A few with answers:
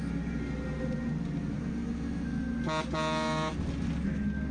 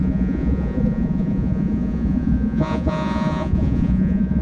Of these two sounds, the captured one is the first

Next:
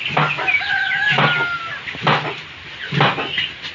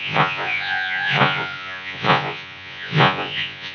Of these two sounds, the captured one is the first